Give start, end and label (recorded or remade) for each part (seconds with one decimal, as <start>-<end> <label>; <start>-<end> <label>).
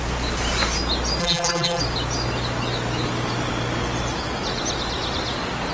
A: 0.0-1.2 recorded; 1.2-1.8 remade; 1.8-5.7 recorded